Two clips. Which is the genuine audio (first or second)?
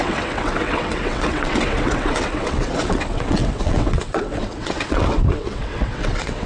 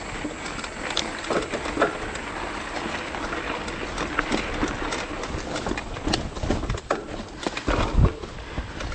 second